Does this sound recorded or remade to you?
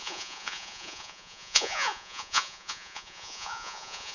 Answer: remade